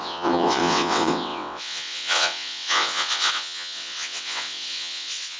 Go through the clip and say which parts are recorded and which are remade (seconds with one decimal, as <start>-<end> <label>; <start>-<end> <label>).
0.0-5.4 remade